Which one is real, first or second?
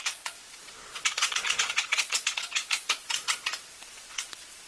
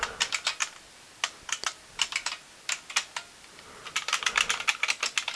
second